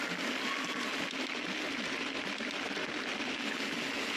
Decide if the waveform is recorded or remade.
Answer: recorded